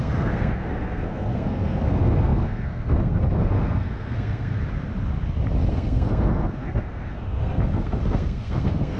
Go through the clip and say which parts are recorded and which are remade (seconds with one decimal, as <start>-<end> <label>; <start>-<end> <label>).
0.0-4.6 remade; 4.6-5.7 recorded; 5.7-9.0 remade